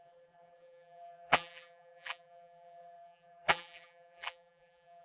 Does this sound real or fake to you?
fake